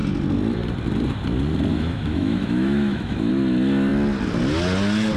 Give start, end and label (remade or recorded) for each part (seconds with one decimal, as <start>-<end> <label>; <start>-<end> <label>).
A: 0.0-1.7 recorded; 1.7-3.3 remade; 3.3-5.2 recorded